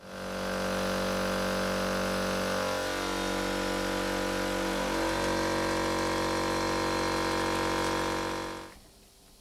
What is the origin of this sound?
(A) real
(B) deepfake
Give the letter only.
A